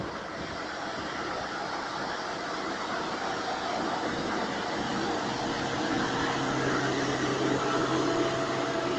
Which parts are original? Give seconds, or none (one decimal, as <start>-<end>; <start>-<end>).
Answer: 0.0-9.0